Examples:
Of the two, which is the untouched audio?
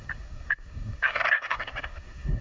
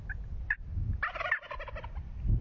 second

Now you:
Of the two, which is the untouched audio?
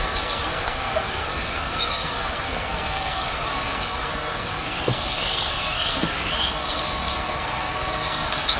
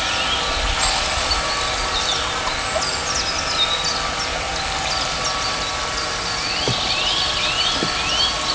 second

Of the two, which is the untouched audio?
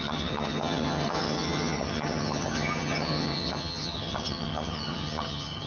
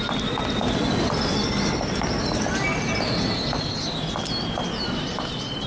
second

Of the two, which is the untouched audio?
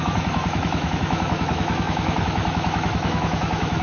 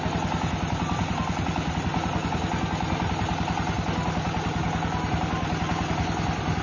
second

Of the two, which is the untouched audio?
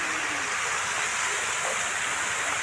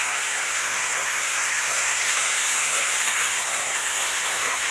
first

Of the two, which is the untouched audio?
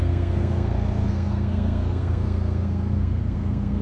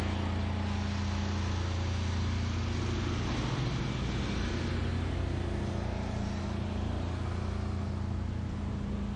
second